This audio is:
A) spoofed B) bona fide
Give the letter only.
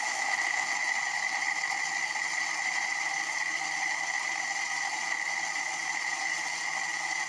B